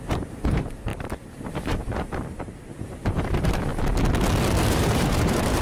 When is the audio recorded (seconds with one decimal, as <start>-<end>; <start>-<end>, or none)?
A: 3.7-4.7